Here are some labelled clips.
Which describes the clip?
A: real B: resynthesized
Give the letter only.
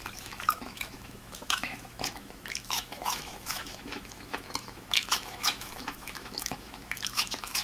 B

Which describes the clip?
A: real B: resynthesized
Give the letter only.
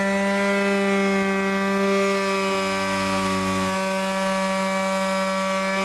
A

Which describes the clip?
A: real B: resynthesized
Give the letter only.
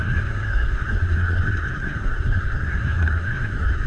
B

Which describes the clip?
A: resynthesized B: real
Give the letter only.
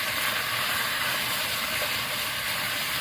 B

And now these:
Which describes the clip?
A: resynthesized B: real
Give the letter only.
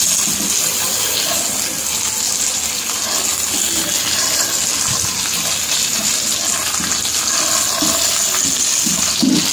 B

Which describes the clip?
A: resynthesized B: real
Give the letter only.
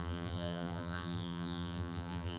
A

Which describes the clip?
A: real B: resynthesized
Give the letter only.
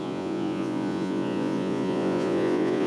B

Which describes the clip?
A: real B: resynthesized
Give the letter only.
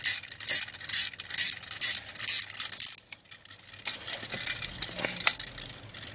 A